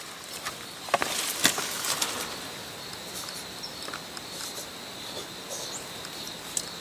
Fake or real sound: real